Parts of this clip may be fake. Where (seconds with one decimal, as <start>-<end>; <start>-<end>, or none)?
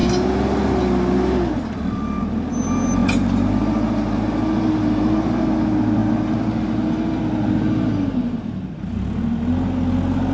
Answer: none